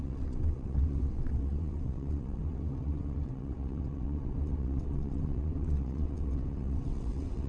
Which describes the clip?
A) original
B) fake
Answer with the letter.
B